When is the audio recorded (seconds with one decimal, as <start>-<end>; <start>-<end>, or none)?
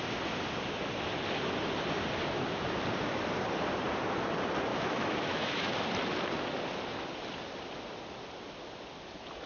0.0-4.7; 5.7-9.5